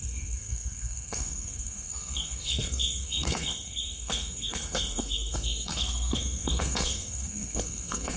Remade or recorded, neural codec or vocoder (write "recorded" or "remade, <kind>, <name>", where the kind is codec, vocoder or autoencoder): remade, codec, SNAC